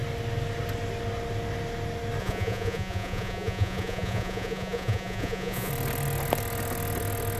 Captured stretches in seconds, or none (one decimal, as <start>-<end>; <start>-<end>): 0.0-2.2; 5.7-7.4